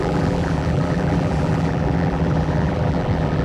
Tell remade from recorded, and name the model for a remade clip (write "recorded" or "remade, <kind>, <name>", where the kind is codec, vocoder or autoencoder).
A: remade, vocoder, BigVGAN v2